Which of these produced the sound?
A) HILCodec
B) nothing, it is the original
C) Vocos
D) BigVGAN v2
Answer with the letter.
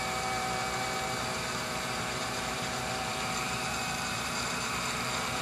D